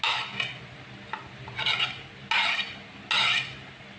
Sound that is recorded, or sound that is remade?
recorded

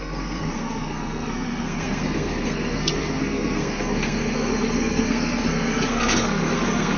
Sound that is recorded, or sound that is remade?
remade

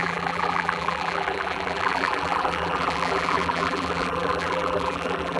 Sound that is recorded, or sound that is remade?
remade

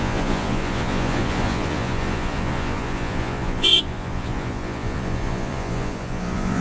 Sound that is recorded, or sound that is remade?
remade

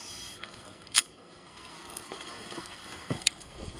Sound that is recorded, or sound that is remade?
remade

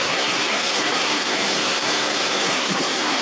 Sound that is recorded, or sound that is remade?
remade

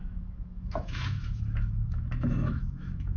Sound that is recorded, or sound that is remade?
remade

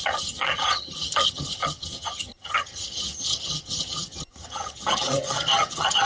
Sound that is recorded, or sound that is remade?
remade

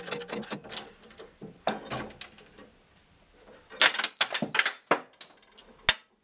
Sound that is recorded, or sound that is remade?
recorded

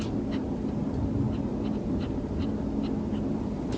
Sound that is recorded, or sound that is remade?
recorded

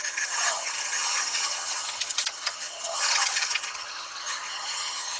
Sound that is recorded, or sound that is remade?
remade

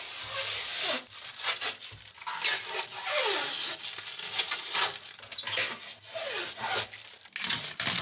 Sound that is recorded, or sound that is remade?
recorded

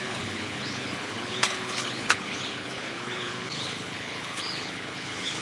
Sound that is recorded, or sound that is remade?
remade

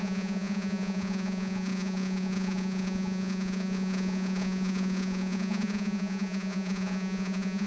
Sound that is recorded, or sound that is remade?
remade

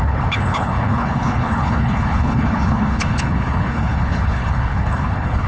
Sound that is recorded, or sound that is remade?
remade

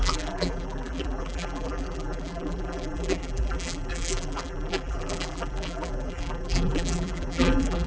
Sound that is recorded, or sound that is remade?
remade